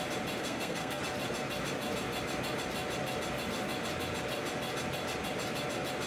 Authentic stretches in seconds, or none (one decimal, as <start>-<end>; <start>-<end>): 0.0-0.4; 1.0-6.1